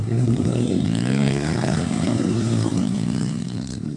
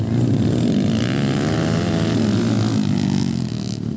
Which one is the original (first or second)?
second